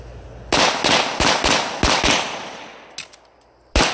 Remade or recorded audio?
recorded